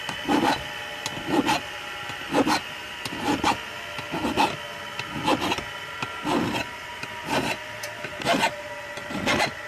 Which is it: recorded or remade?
recorded